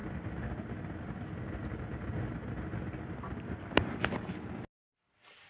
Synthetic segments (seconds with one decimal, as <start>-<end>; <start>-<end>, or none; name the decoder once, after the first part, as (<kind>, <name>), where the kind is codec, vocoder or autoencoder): none